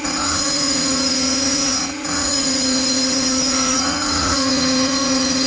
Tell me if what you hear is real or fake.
fake